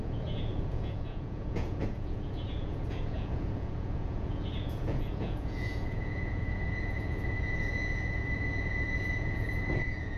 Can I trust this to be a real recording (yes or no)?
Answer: no